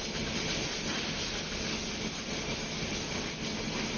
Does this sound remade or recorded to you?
recorded